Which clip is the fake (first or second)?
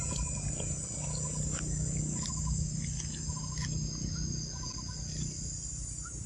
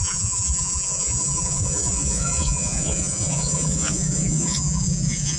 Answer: second